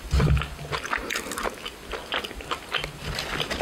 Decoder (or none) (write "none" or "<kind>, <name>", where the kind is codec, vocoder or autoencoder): none